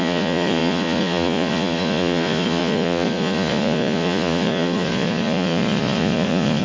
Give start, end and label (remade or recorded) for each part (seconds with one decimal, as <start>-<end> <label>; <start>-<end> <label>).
0.0-6.6 remade